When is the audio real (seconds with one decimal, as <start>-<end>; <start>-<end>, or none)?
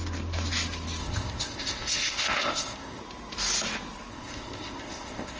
0.0-1.0; 3.0-4.1